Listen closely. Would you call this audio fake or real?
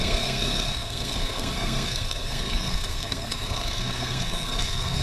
fake